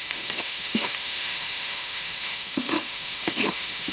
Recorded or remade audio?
remade